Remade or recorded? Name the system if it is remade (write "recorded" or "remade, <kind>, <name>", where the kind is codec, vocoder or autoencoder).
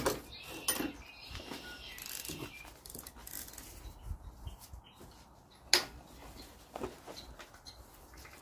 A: recorded